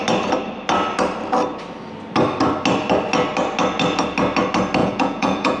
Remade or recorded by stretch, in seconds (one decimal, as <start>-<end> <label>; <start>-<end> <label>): 0.0-4.8 recorded; 4.8-5.6 remade